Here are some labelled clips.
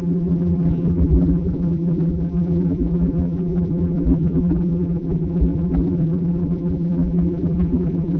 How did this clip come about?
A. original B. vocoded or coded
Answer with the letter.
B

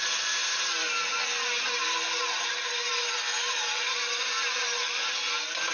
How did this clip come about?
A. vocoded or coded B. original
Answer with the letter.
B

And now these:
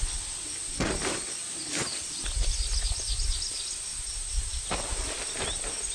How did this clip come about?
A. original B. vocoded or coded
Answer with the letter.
A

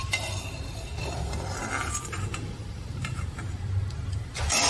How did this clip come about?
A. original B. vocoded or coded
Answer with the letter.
A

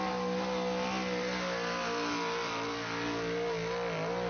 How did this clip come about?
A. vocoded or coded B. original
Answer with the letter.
B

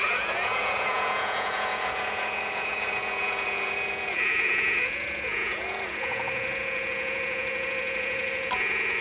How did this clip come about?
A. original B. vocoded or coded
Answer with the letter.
B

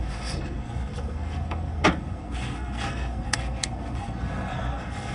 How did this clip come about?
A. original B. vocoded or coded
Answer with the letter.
B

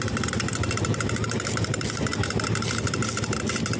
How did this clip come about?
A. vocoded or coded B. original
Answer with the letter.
A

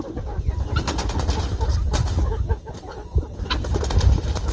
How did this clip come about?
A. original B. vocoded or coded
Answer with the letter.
A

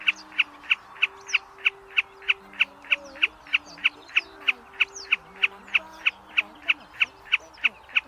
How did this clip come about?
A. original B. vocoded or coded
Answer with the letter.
A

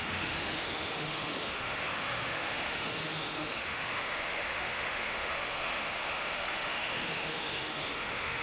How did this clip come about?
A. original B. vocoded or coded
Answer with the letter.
B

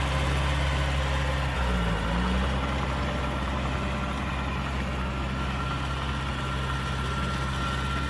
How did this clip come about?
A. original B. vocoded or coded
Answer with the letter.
A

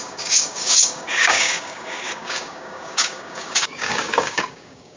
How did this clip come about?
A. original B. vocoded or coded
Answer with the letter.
B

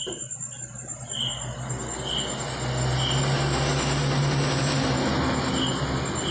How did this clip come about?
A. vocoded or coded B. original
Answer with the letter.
B